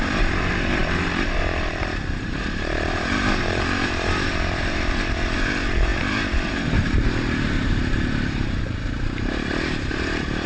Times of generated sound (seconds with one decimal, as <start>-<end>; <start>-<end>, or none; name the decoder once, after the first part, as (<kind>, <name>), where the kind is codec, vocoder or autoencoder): 0.0-10.5 (vocoder, BigVGAN v2)